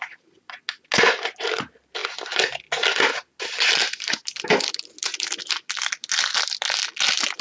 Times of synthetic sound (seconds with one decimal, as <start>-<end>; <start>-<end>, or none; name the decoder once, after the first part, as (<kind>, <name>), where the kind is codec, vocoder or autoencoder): none